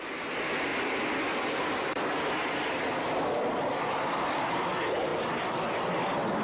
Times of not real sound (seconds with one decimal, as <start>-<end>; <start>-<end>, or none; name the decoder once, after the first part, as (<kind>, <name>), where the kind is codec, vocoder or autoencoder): none